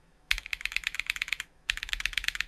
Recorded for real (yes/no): no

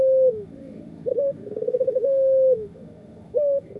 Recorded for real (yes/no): no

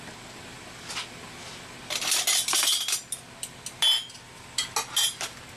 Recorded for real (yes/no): yes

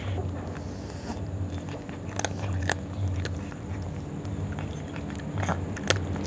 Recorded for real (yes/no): yes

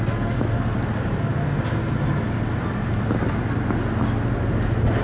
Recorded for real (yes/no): yes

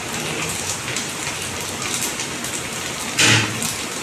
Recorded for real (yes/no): yes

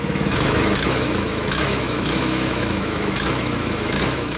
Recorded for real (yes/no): no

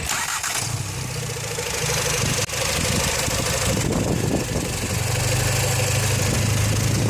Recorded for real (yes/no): yes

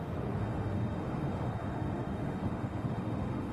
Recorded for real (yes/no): no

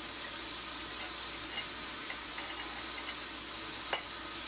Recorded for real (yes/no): yes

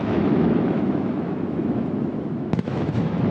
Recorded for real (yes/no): no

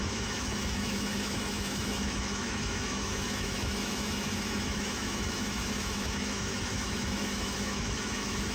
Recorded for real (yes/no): no